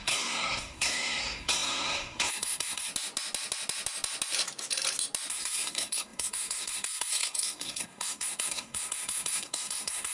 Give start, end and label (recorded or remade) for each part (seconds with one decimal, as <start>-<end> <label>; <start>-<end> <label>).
0.0-2.9 remade; 2.9-5.3 recorded; 5.3-10.1 remade